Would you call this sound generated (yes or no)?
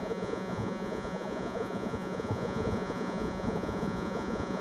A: yes